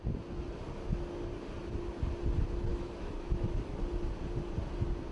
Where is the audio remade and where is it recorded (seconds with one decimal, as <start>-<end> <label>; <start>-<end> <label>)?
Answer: 0.0-2.7 recorded; 2.7-3.8 remade; 3.8-5.1 recorded